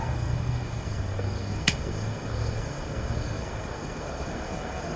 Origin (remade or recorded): remade